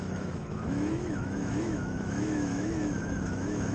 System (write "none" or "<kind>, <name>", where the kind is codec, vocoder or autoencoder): autoencoder, DAC-VAE